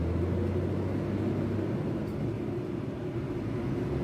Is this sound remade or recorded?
recorded